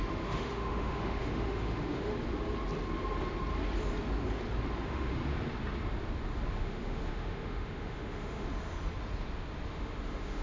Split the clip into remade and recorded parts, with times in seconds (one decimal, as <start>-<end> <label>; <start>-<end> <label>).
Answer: 0.0-2.1 remade; 2.1-4.8 recorded; 4.8-5.2 remade; 5.2-6.5 recorded; 6.5-8.5 remade; 8.5-9.7 recorded; 9.7-10.4 remade